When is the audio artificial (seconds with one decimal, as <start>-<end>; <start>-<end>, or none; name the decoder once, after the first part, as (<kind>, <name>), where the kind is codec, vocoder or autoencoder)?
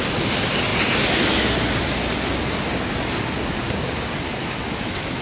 4.4-5.2 (autoencoder, DAC-VAE)